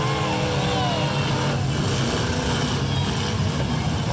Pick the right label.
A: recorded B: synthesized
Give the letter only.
A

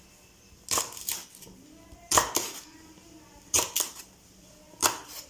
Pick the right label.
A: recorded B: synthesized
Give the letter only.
A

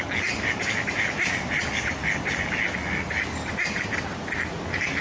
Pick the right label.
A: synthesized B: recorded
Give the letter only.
B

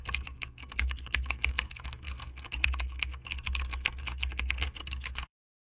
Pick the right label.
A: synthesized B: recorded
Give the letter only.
A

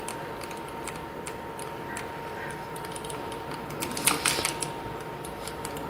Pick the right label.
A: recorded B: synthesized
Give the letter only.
A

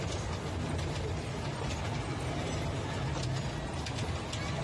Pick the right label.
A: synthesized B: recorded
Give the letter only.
B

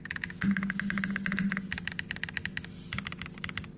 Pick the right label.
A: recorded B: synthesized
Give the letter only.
A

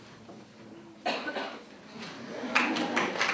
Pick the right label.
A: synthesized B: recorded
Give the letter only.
B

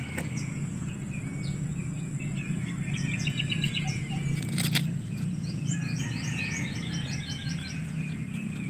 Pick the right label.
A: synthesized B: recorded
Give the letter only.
A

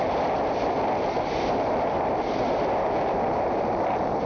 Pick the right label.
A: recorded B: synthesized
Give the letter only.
A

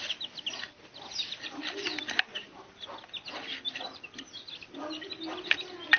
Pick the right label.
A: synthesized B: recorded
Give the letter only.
B